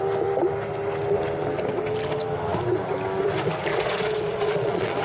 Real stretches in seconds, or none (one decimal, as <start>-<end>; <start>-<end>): 0.0-3.7